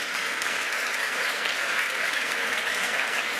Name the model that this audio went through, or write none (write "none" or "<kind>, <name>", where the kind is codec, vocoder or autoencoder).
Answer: codec, SNAC